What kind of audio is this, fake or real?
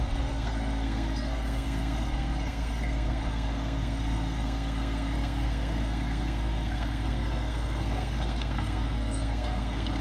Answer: fake